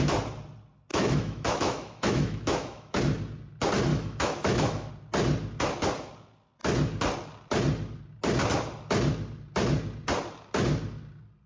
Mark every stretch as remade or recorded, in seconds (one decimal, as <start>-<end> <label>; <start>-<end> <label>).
0.0-0.9 recorded; 0.9-3.0 remade; 3.0-3.9 recorded; 3.9-4.9 remade; 4.9-11.5 recorded